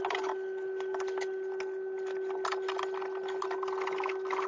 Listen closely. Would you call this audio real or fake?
real